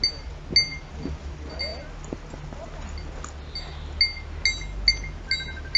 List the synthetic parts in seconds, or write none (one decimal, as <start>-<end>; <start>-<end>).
none